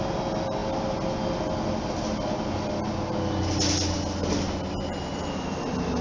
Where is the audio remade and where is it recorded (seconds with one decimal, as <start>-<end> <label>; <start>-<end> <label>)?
0.0-6.0 recorded